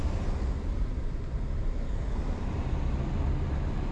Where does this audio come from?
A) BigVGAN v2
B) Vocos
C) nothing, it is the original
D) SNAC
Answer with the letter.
C